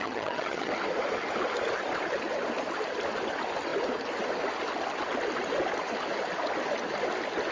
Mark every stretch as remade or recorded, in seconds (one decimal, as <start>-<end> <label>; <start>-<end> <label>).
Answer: 0.0-0.7 remade; 0.7-7.5 recorded